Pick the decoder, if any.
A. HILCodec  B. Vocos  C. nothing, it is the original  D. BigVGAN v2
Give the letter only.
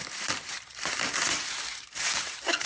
D